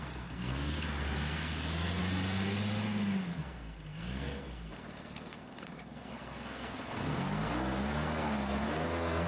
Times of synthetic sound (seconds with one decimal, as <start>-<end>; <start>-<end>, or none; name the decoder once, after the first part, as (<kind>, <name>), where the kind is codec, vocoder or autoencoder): 0.0-2.0 (codec, SNAC); 3.2-9.3